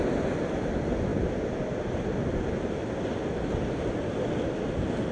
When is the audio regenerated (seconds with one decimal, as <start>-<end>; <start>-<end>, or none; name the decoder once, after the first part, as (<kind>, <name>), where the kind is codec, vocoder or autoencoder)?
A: none